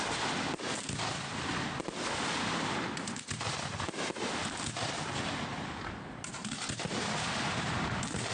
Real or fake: real